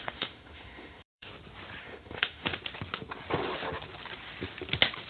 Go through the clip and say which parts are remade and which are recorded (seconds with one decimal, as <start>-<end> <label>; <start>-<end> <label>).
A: 0.0-1.3 remade; 1.3-1.8 recorded; 1.8-2.5 remade; 2.5-5.1 recorded